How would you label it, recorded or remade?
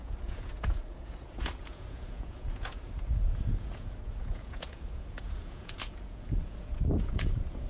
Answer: remade